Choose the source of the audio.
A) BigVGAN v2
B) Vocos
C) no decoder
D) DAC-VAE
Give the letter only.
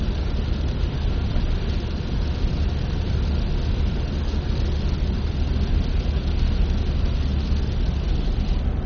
C